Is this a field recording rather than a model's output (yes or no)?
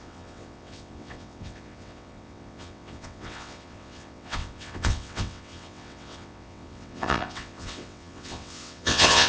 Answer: no